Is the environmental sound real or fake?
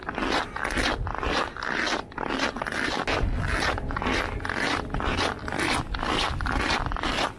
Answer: real